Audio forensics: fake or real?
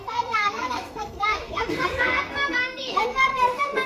fake